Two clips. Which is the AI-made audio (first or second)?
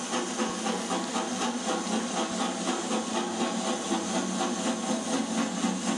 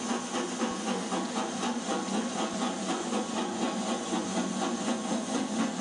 second